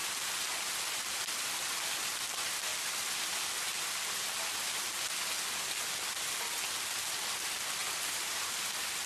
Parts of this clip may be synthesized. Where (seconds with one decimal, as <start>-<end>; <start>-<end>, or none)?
7.8-8.7